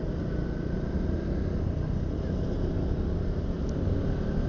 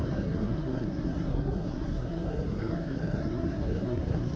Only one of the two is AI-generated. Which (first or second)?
second